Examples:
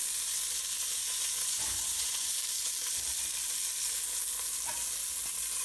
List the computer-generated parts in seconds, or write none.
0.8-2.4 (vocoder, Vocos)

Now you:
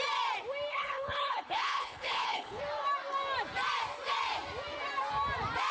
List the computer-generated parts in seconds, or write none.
0.7-2.6 (codec, HILCodec)

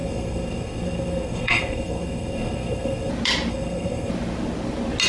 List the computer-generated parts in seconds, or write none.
0.0-3.1 (codec, SNAC); 3.5-4.1

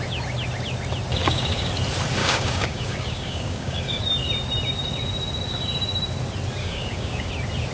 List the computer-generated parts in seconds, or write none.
1.2-1.7 (codec, DAC); 2.2-4.0; 6.6-7.3

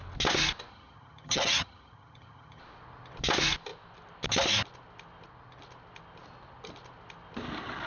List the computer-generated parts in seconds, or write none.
0.7-2.6 (vocoder, HiFi-GAN)

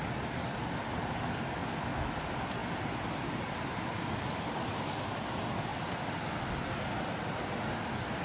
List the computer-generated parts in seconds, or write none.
none